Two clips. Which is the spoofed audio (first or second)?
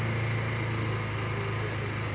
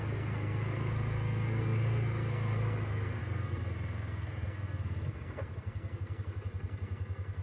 second